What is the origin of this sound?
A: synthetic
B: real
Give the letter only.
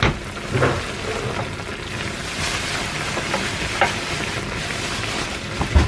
B